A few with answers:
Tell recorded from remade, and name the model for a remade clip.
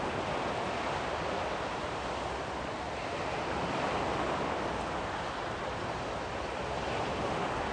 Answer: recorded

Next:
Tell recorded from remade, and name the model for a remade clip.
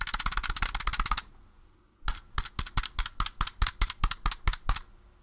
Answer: recorded